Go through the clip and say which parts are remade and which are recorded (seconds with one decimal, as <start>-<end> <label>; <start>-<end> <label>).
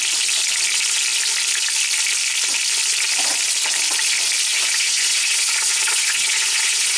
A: 0.0-4.5 recorded; 4.5-7.0 remade